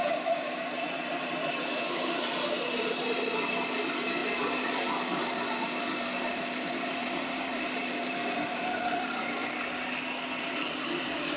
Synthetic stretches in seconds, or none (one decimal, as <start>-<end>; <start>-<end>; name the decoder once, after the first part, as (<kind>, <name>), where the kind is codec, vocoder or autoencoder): 0.0-9.4 (vocoder, BigVGAN v2); 10.4-11.4